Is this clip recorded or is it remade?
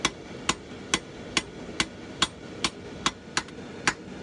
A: recorded